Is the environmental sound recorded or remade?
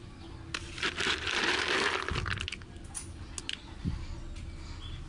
recorded